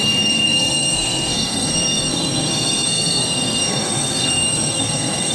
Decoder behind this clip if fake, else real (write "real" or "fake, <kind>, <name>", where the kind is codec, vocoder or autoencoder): fake, codec, SNAC